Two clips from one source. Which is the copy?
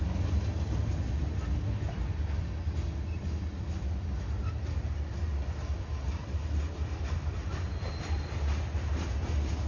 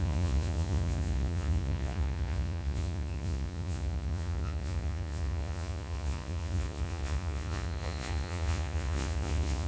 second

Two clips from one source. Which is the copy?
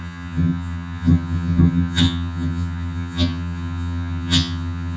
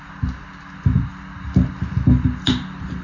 first